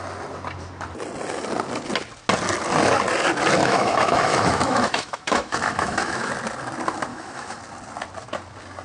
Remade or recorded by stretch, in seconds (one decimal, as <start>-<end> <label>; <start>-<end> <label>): 0.0-3.6 recorded; 3.6-6.3 remade; 6.3-7.1 recorded; 7.1-7.6 remade; 7.6-8.8 recorded